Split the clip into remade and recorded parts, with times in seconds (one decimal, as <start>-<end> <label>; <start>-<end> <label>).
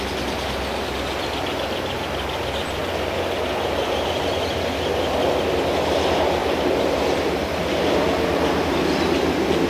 0.0-9.7 recorded